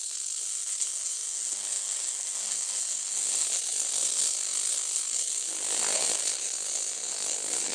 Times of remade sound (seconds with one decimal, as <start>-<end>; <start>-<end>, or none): 0.0-7.7